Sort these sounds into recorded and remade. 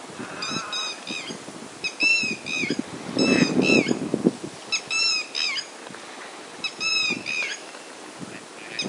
recorded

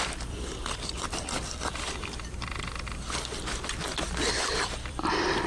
remade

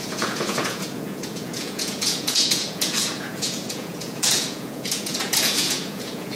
remade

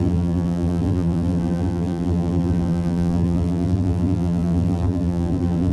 remade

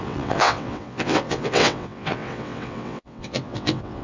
remade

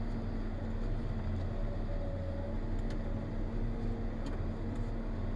recorded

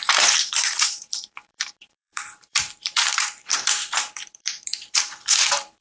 remade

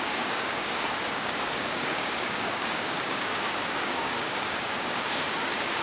remade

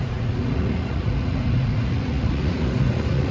remade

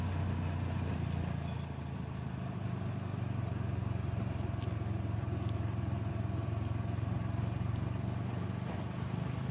recorded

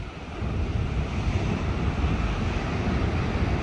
recorded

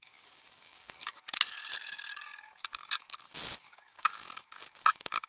remade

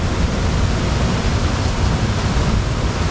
recorded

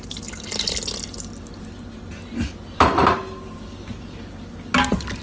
recorded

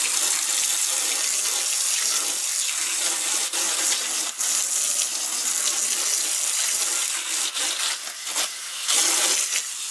recorded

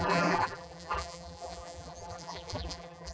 remade